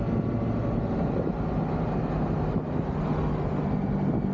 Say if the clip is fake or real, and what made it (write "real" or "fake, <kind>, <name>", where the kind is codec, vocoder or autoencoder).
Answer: real